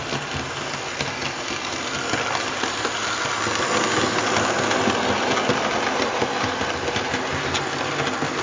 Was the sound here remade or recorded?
recorded